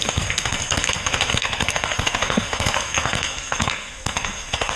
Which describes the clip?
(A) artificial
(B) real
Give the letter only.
A